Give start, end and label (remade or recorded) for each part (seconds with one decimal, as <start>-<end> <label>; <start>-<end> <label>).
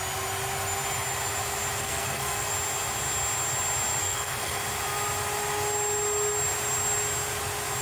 0.0-1.8 recorded; 1.8-2.5 remade; 2.5-4.0 recorded; 4.0-4.6 remade; 4.6-7.8 recorded